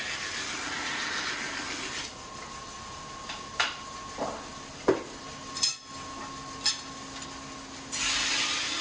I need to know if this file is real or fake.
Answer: real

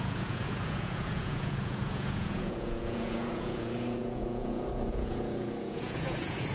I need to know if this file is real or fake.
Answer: fake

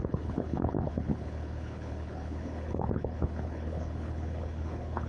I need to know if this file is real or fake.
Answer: fake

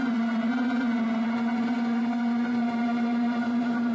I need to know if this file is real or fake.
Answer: real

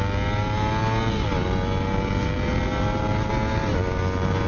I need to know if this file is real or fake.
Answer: real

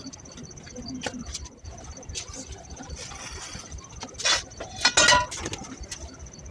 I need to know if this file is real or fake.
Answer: real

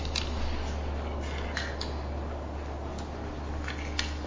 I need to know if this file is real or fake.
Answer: real